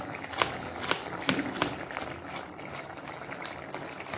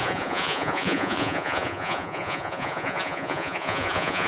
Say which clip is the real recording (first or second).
first